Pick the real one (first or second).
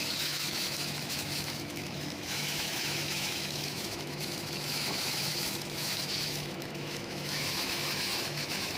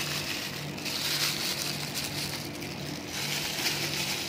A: second